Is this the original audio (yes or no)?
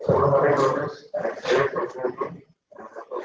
yes